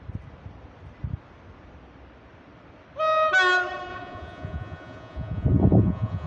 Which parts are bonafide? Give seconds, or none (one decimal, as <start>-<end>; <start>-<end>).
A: 0.0-3.9